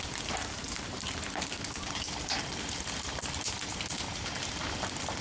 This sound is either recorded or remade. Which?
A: recorded